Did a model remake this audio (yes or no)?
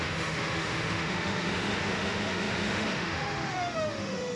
yes